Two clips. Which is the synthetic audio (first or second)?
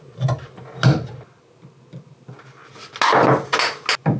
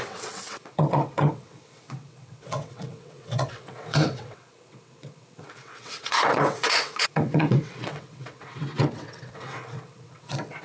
second